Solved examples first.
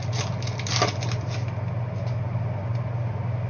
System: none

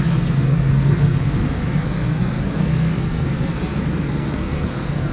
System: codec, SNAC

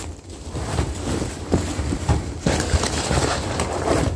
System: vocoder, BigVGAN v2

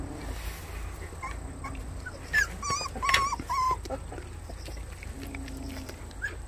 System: none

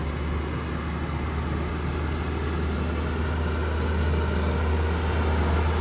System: none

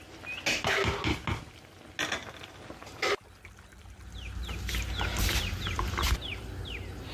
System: none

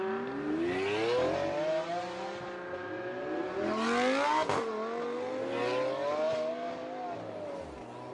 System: none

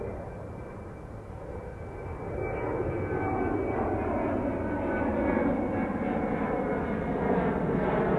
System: none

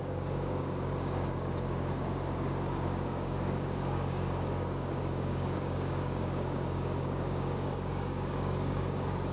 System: codec, DAC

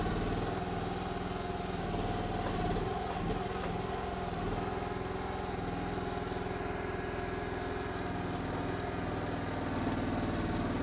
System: none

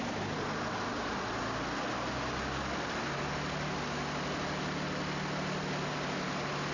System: none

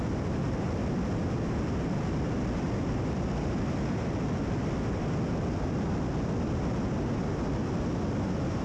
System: none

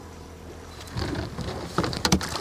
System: vocoder, BigVGAN v2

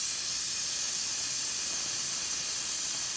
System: none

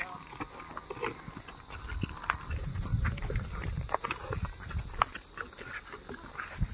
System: none